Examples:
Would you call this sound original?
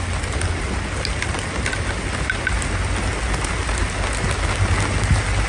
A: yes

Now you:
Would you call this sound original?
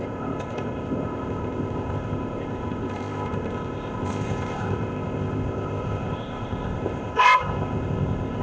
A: no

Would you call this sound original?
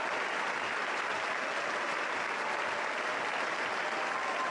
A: yes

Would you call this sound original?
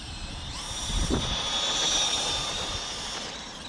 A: no